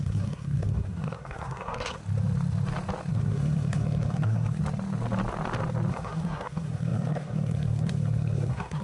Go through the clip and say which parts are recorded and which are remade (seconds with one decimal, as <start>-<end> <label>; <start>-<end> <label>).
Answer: 0.0-2.0 remade; 2.0-3.1 recorded; 3.1-4.6 remade; 4.6-5.9 recorded; 5.9-8.8 remade